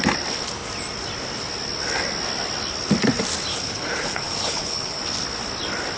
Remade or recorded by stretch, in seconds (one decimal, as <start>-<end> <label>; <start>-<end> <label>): 0.0-3.5 recorded; 3.5-5.0 remade; 5.0-6.0 recorded